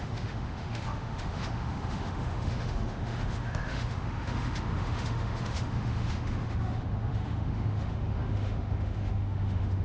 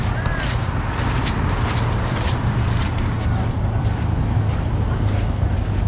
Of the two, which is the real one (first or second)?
second